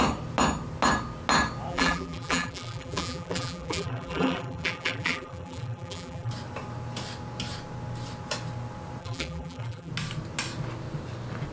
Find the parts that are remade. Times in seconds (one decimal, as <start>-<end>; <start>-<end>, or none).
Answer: 1.7-6.3; 9.0-9.9

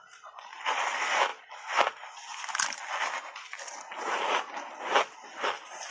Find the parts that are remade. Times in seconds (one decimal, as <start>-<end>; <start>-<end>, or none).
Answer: none

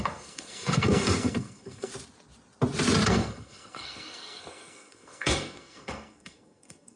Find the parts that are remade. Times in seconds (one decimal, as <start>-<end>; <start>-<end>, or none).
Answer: 0.0-1.9; 3.1-7.0

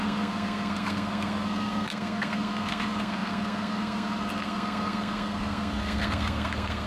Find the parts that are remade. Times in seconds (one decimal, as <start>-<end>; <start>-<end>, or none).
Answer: 0.0-6.9

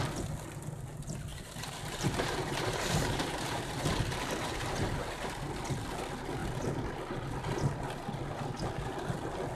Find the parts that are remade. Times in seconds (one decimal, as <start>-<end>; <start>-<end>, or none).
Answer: 1.3-5.4

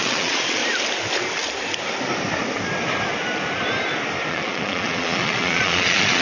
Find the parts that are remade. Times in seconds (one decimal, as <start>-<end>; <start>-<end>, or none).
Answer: 0.0-0.6; 4.3-6.2

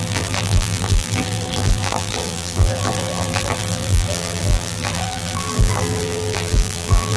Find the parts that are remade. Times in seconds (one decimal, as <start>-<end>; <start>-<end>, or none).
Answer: 0.0-7.2